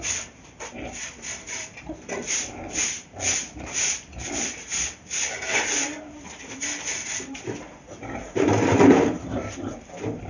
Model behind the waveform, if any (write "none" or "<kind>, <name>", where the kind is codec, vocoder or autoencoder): vocoder, BigVGAN v2